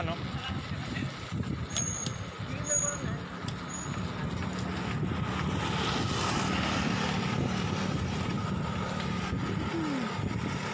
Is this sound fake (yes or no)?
no